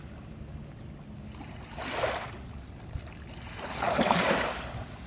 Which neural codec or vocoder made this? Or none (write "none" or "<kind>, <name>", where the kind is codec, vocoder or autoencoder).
none